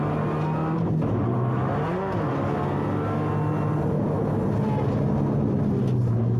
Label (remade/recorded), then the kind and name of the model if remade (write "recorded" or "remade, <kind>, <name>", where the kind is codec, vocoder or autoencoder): recorded